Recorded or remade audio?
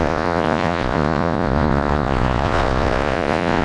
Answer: remade